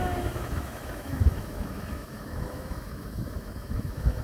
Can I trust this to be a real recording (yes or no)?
no